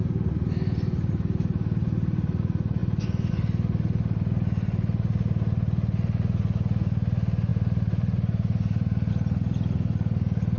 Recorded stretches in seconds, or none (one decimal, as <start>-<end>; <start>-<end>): 0.0-7.5; 9.1-10.6